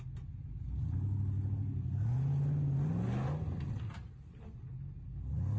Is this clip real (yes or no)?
yes